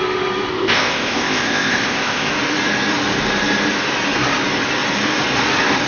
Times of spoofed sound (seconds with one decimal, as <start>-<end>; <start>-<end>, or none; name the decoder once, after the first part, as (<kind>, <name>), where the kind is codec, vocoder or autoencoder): 0.5-2.3 (codec, ZipCodec)

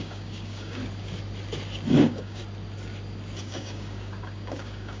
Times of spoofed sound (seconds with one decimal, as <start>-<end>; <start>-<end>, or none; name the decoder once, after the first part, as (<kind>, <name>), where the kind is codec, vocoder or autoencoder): 0.0-0.8 (codec, DAC); 1.9-2.4; 3.4-5.0

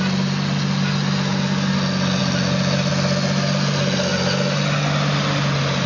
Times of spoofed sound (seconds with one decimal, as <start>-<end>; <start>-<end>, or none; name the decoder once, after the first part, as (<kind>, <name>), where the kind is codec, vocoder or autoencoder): none

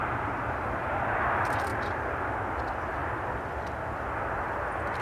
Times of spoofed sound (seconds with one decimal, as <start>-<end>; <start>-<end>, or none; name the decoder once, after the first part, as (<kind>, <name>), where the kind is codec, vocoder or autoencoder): none

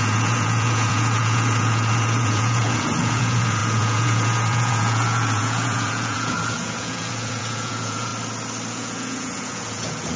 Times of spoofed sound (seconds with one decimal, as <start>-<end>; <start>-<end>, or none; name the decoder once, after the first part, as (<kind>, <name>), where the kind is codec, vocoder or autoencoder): 0.0-8.1 (vocoder, Vocos); 8.7-10.2

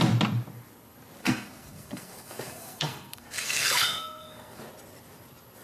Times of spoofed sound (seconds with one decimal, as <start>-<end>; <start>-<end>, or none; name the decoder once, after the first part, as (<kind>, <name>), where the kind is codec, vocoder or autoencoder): 1.2-4.6 (codec, SNAC)

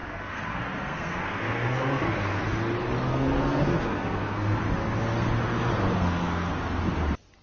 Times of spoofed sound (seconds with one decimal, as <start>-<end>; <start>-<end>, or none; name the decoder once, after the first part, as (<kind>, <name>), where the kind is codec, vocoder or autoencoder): 0.0-2.4 (codec, SNAC); 3.1-4.6; 5.9-6.5

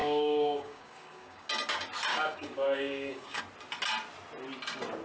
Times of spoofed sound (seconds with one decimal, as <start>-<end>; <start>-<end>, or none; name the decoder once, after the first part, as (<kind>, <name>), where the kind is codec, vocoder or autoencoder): 0.0-1.5 (codec, DAC); 2.1-3.4